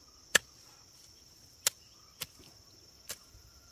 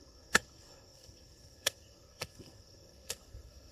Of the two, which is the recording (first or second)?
first